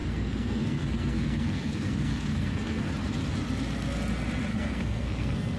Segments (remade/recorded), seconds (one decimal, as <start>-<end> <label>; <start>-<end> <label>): 0.0-2.9 remade; 2.9-4.5 recorded; 4.5-5.6 remade